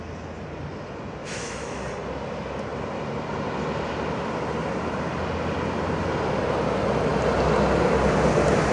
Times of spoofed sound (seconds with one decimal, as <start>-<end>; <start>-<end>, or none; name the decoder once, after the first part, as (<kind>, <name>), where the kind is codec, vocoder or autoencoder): 1.2-1.8 (autoencoder, DAC-VAE)